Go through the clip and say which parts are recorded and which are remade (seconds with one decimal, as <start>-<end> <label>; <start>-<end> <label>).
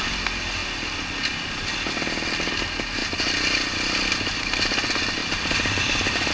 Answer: 0.0-5.2 recorded; 5.2-6.3 remade